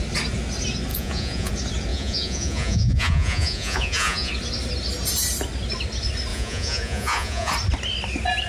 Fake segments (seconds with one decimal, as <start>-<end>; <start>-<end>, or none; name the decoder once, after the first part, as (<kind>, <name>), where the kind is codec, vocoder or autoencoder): 0.9-1.5 (vocoder, Vocos); 1.9-4.3; 6.3-7.5